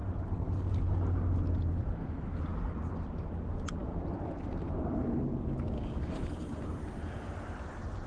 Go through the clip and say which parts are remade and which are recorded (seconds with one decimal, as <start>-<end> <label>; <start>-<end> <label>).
0.0-5.8 recorded; 5.8-7.3 remade; 7.3-8.1 recorded